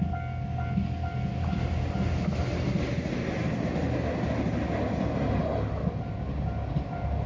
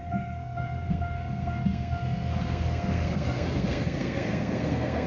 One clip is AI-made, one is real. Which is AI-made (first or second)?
second